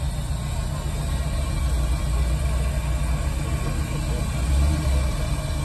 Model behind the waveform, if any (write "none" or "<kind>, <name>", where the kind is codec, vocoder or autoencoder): none